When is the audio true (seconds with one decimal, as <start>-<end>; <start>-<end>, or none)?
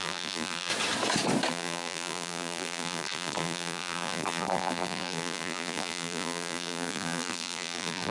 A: 0.7-1.5